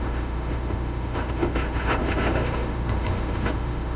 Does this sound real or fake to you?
fake